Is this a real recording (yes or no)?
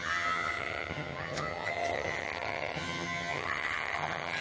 no